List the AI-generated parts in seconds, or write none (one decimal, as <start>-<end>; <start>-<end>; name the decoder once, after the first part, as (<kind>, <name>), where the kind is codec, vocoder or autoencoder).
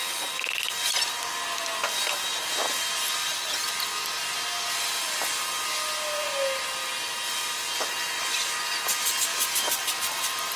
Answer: 9.3-10.6 (vocoder, BigVGAN v2)